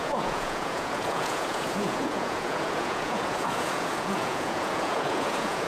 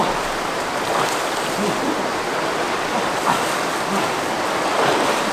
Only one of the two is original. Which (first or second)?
second